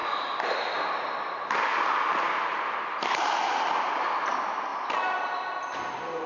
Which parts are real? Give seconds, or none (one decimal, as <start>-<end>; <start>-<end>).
0.0-6.3